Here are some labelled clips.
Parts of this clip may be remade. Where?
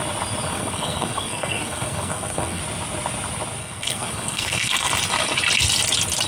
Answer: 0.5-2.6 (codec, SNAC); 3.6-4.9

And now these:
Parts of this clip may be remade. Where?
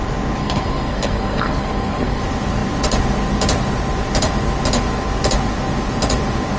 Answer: 0.4-2.2 (codec, SNAC)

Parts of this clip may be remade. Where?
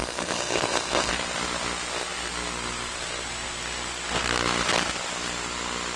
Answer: 0.0-1.1 (codec, SNAC)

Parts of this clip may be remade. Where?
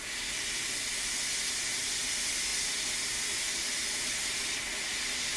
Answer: none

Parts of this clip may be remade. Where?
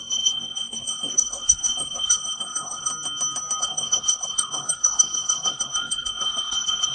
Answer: 0.0-2.9 (codec, SNAC); 3.6-6.9